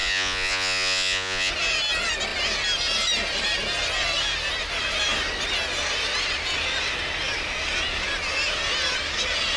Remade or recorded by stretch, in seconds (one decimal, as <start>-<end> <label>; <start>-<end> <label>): 0.0-1.5 remade; 1.5-9.6 recorded